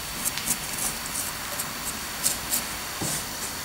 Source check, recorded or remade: recorded